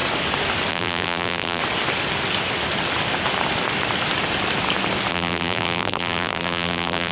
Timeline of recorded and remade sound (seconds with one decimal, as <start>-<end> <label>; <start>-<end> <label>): 0.0-0.7 recorded; 0.7-1.6 remade; 1.6-5.1 recorded; 5.1-7.1 remade